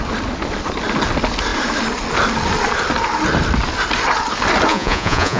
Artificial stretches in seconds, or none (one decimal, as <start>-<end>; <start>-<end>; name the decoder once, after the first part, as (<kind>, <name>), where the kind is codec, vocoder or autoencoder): 4.7-5.4 (vocoder, Vocos)